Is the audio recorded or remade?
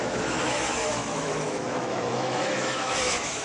remade